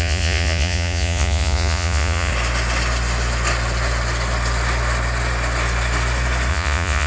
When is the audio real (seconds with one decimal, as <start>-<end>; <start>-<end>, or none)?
2.3-6.5